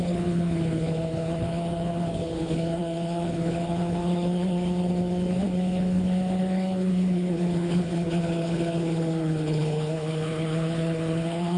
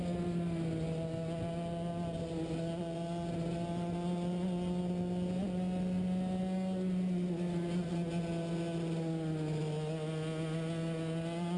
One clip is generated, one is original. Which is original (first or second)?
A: second